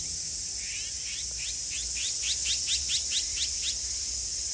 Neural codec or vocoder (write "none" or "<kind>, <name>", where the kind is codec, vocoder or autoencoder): none